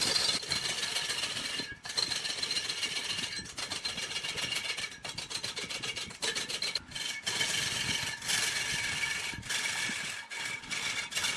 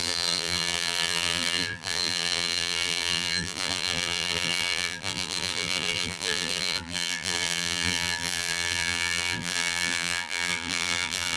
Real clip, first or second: first